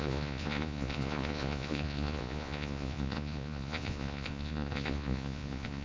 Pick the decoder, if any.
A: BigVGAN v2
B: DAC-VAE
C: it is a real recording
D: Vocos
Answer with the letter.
D